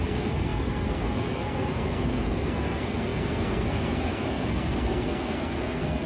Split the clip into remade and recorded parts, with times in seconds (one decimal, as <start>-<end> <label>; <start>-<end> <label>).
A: 0.0-6.1 remade